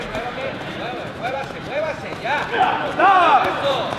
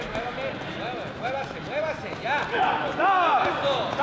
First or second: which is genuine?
second